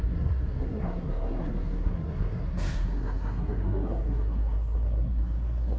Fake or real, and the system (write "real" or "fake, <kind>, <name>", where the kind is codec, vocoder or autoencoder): fake, codec, SNAC